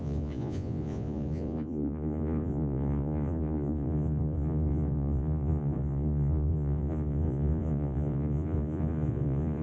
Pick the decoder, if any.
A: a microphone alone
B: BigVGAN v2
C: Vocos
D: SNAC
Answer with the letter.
C